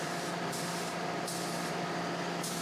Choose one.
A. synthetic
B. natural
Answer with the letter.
B